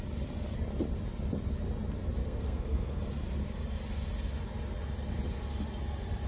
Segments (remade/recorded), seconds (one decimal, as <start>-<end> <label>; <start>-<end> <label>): 0.0-2.2 recorded; 2.2-3.0 remade; 3.0-6.3 recorded